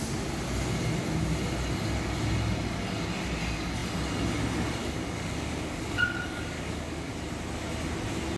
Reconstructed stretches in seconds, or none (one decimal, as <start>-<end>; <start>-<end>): 4.8-7.1